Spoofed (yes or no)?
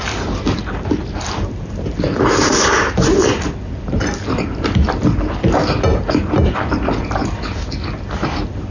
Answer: no